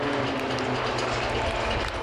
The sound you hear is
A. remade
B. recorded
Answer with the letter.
B